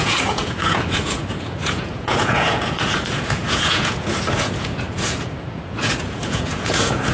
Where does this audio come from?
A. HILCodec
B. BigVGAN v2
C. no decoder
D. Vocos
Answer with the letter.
D